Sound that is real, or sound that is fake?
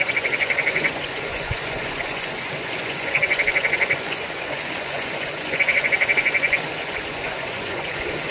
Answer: fake